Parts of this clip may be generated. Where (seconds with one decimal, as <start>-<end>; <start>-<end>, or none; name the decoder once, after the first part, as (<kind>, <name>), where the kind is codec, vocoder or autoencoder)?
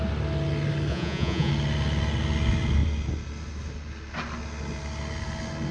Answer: 0.9-1.5 (vocoder, Vocos)